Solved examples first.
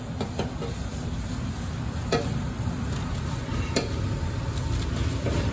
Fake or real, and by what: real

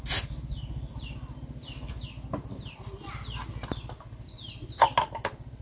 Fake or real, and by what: real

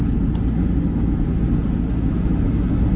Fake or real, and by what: real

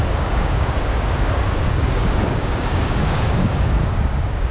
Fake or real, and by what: fake, codec, DAC